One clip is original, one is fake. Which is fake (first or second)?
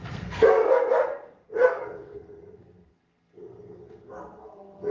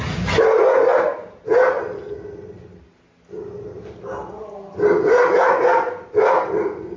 first